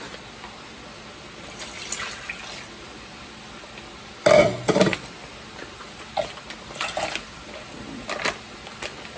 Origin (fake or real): real